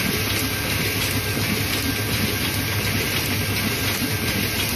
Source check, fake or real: fake